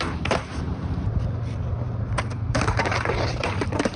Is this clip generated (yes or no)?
yes